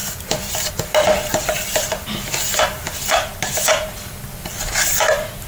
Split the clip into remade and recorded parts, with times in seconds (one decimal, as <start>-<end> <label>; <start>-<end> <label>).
0.0-0.7 remade; 0.7-5.5 recorded